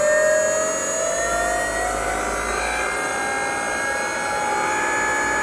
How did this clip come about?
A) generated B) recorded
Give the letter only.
B